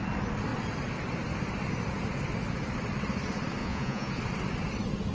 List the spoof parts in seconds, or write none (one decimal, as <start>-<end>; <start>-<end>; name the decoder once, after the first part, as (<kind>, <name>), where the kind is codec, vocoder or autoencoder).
3.6-4.1 (vocoder, Vocos)